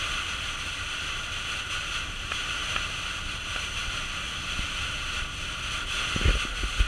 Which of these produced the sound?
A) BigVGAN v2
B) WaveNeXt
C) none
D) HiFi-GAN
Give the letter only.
C